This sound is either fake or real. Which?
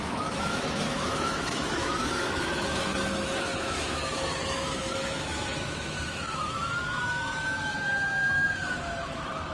fake